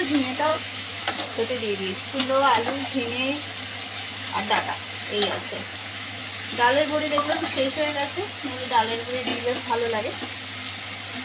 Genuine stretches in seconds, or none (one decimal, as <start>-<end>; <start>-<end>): 0.0-0.5; 2.2-5.7; 6.2-11.2